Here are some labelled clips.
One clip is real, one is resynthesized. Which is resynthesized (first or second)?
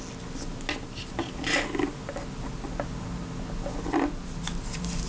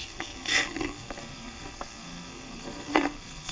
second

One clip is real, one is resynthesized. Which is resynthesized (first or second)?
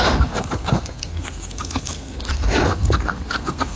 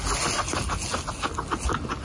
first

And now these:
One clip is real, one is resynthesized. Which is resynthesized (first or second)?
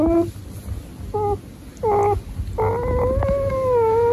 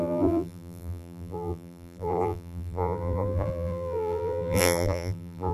second